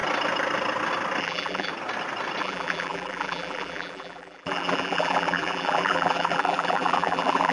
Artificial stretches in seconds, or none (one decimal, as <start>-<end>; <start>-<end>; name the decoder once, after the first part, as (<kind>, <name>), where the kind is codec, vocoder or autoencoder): 1.2-1.7 (vocoder, BigVGAN v2); 2.4-7.5